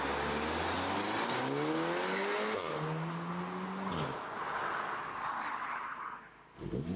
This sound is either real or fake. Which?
real